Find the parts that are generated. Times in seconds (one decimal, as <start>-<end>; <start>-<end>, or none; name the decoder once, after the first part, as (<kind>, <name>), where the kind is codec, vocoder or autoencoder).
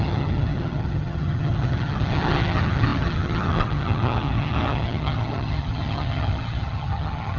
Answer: 0.0-7.4 (vocoder, HiFi-GAN)